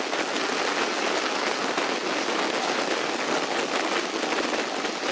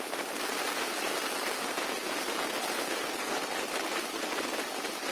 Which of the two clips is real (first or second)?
first